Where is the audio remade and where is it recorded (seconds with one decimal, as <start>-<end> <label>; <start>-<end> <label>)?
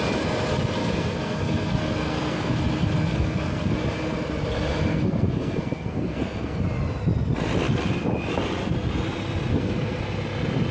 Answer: 0.0-0.8 recorded; 0.8-2.6 remade; 2.6-3.1 recorded; 3.1-3.7 remade; 3.7-4.9 recorded; 4.9-6.6 remade; 6.6-9.5 recorded; 9.5-10.0 remade; 10.0-10.7 recorded